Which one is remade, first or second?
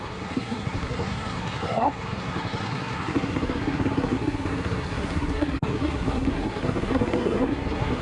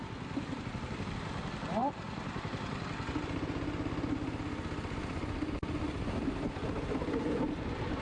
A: first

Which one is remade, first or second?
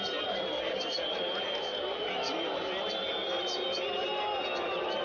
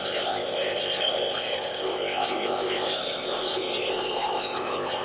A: second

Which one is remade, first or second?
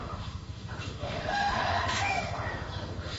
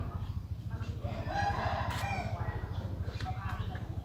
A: first